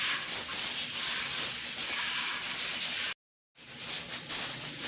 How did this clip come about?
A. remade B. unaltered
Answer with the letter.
B